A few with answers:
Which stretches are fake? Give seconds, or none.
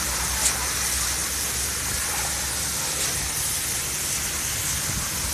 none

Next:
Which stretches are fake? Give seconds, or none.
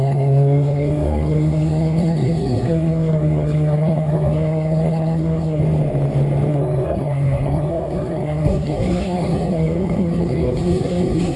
0.0-5.6 (codec, SNAC); 6.5-11.4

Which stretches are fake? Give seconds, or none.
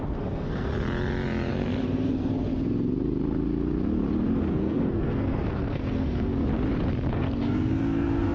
0.0-0.7 (codec, SNAC); 1.5-2.3; 4.5-6.4; 7.1-8.3